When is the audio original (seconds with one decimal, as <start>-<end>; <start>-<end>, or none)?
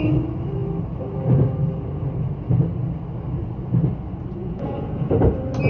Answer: 0.0-4.4; 5.1-5.7